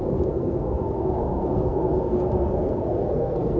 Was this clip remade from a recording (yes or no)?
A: yes